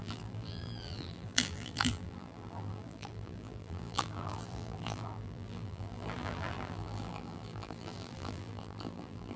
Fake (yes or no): yes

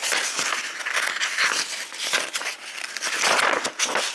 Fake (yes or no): no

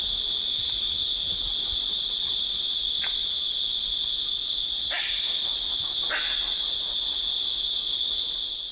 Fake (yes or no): no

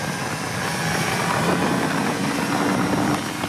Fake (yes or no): yes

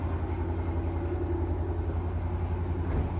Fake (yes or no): no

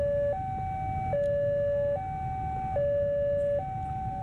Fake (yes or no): no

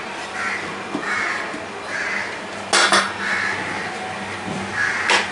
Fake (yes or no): no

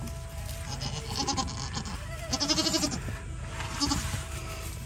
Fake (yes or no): no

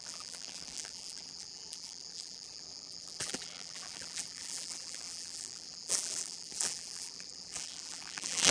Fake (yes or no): yes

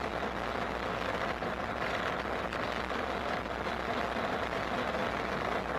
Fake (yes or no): no